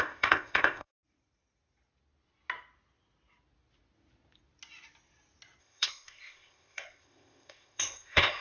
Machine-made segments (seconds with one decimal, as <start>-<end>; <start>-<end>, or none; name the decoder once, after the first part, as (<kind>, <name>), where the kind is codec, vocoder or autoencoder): 0.0-0.9 (codec, ZipCodec); 5.6-8.4